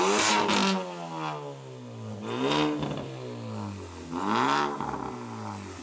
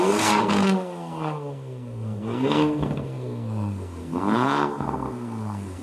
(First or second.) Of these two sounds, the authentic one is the first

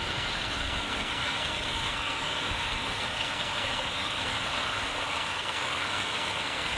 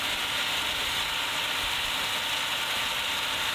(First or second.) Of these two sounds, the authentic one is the second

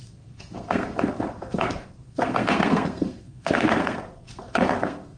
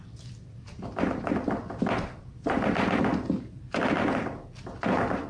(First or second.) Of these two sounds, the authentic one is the second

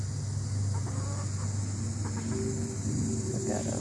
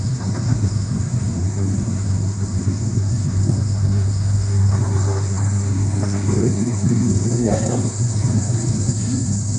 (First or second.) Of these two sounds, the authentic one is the first